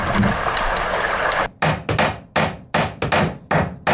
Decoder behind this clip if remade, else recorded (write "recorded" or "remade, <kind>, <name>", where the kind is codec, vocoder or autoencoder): recorded